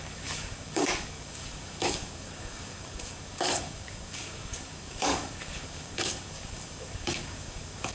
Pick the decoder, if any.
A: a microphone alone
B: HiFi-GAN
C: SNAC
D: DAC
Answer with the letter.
D